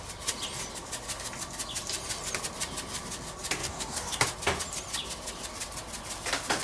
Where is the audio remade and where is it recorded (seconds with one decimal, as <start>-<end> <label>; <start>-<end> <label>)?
0.0-3.6 recorded; 3.6-4.2 remade; 4.2-6.6 recorded

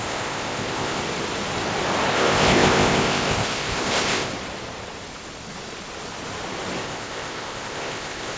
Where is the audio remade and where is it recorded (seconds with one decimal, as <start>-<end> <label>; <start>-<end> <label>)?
0.0-1.0 remade; 1.0-2.1 recorded; 2.1-4.3 remade; 4.3-6.8 recorded; 6.8-8.4 remade

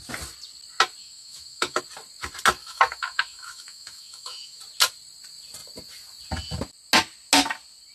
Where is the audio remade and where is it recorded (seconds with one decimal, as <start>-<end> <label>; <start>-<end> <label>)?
0.0-1.0 recorded; 1.0-1.8 remade; 1.8-2.6 recorded; 2.6-4.6 remade; 4.6-7.9 recorded

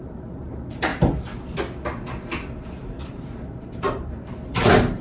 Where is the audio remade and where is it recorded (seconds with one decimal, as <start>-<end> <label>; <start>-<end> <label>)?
0.0-0.9 remade; 0.9-3.0 recorded; 3.0-5.0 remade

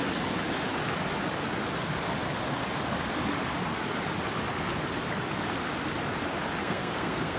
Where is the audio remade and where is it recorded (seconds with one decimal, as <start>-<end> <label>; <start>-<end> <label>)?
0.0-6.6 recorded; 6.6-7.4 remade

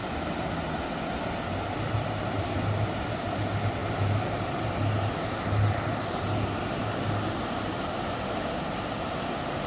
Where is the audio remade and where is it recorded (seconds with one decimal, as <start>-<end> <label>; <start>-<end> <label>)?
0.0-9.7 recorded

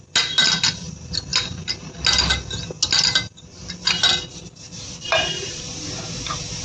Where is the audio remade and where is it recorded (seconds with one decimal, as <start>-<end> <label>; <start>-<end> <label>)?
0.0-6.6 recorded

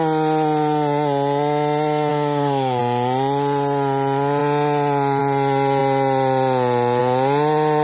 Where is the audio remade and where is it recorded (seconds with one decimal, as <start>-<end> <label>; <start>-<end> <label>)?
0.0-2.1 recorded; 2.1-2.8 remade; 2.8-7.8 recorded